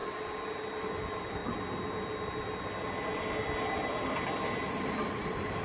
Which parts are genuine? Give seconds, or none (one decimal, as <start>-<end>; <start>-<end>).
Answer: 0.0-0.8; 1.4-4.8